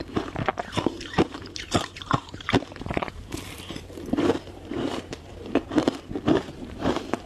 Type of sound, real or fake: fake